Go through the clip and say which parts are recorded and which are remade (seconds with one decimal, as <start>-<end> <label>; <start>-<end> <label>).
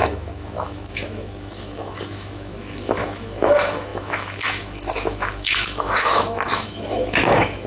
0.0-7.7 remade